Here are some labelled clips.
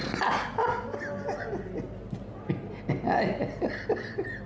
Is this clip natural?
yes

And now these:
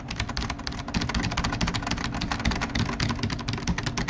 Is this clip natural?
yes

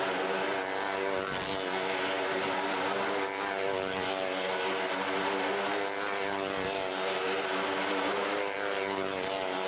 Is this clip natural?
yes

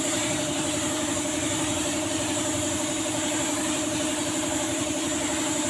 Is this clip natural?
no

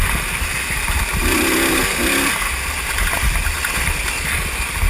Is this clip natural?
yes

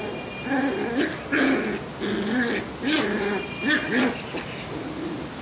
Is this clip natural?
yes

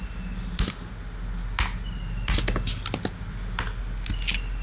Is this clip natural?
yes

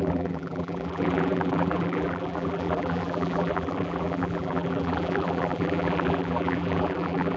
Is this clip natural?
no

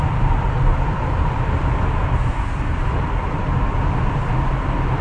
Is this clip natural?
no